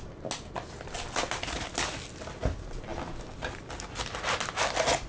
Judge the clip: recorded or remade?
recorded